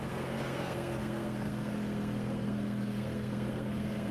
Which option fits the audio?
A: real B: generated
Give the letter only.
B